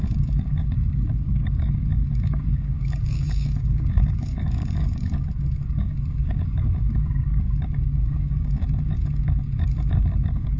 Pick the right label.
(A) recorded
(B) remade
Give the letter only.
B